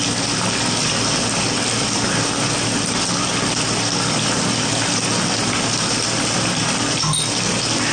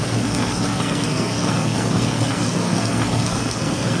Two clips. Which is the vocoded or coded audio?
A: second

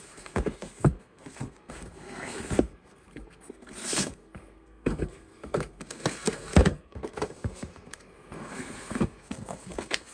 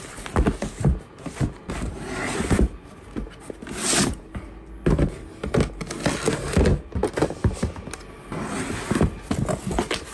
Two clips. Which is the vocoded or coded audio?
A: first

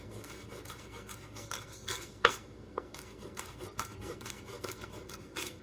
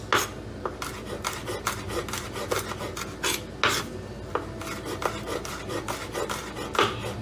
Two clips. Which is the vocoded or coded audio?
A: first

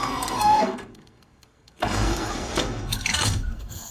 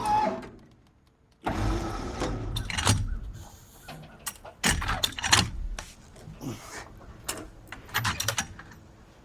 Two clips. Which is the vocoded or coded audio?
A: first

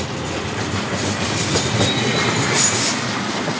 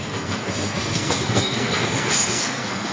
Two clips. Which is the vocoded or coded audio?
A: second